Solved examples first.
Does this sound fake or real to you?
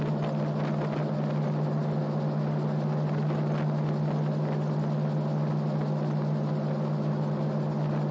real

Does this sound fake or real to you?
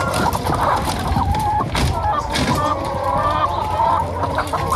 real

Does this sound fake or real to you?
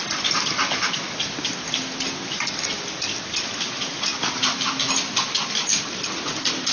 real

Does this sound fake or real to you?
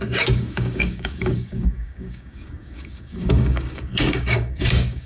fake